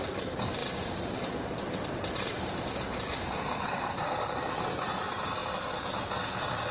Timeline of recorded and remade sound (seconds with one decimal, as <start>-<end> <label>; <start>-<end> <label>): 0.0-0.6 recorded; 0.6-4.4 remade; 4.4-6.7 recorded